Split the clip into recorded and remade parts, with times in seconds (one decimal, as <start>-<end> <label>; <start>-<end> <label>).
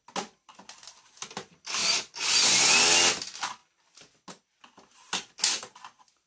0.0-6.3 recorded